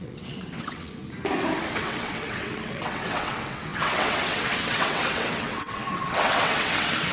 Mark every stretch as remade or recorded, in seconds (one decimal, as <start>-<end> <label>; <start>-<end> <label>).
0.0-1.0 remade; 1.0-1.7 recorded; 1.7-7.1 remade